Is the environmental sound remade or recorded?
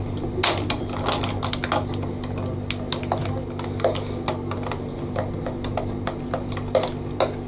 recorded